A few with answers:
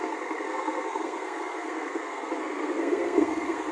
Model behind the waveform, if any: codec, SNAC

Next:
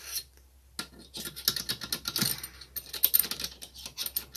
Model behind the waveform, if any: none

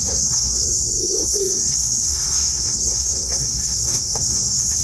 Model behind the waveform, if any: codec, SNAC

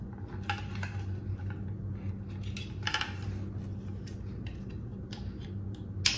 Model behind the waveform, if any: none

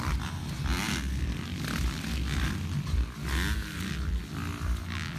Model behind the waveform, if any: none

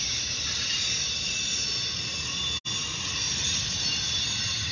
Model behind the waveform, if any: none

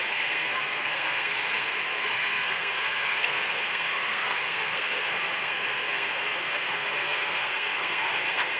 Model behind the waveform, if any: codec, SNAC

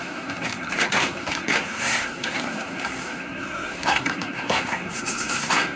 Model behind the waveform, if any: codec, SNAC